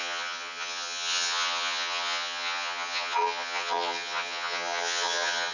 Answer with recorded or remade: remade